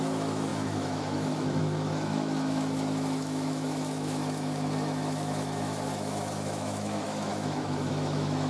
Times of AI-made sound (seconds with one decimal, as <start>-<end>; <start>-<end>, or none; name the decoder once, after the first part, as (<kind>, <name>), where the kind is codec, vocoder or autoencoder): 0.0-8.5 (autoencoder, DAC-VAE)